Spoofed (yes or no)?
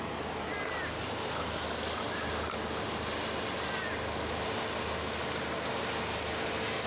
no